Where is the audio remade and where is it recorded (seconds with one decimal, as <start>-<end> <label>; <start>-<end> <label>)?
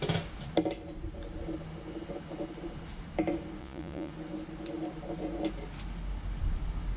0.0-3.6 recorded; 3.6-4.1 remade; 4.1-7.0 recorded